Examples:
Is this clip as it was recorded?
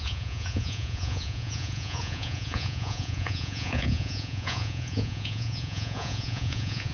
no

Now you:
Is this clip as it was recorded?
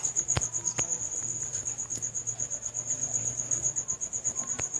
yes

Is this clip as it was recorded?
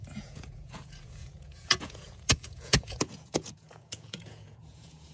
no